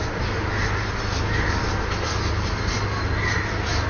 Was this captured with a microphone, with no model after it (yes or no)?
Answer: yes